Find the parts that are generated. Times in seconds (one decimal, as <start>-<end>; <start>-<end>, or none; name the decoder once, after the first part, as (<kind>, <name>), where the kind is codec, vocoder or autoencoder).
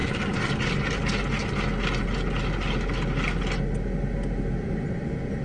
0.0-0.5 (vocoder, BigVGAN v2)